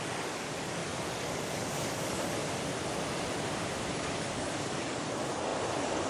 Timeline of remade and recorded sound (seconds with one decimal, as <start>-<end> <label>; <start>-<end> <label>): 0.0-2.4 remade; 2.4-3.9 recorded; 3.9-6.1 remade